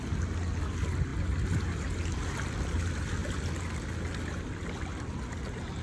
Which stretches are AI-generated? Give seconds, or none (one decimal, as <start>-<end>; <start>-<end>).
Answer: none